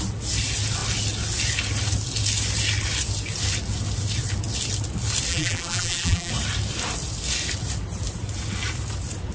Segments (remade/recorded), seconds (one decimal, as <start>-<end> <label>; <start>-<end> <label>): 0.0-5.3 recorded; 5.3-6.3 remade; 6.3-9.3 recorded